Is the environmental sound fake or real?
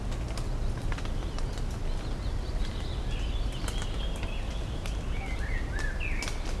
real